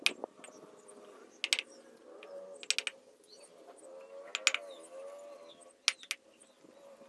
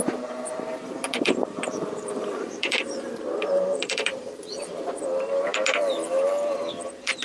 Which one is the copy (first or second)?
second